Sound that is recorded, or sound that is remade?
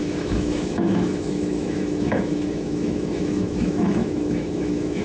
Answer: remade